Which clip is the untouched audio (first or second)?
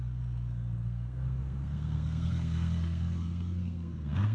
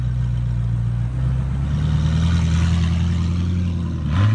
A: second